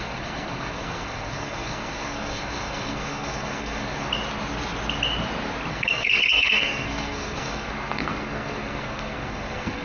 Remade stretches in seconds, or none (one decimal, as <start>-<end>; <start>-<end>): 0.0-4.1; 5.7-9.8